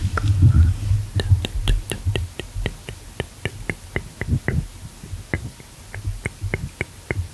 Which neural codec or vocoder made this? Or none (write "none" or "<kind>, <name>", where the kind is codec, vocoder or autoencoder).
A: none